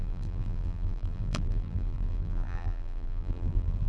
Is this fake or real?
fake